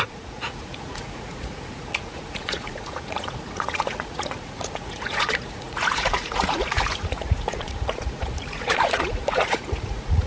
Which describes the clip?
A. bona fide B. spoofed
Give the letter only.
B